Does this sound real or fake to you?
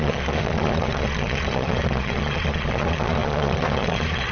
fake